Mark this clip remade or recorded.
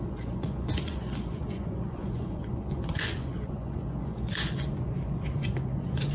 remade